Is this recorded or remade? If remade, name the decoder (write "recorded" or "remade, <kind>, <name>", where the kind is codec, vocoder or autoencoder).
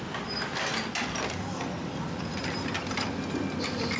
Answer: recorded